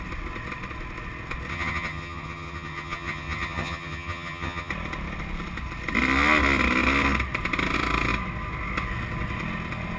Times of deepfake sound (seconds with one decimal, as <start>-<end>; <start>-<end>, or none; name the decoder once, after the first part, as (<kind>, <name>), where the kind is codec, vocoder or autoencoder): 1.5-4.7 (vocoder, HiFi-GAN)